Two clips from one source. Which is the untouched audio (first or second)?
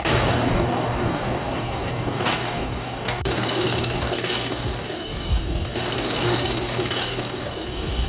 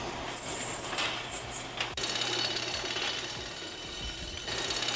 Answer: second